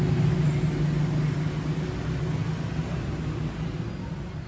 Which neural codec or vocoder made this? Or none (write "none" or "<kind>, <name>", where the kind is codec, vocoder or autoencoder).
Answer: none